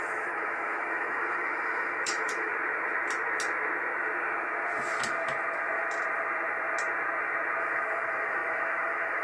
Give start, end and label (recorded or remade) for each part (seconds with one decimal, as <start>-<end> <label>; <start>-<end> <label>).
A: 0.0-2.5 remade; 2.5-7.6 recorded; 7.6-9.2 remade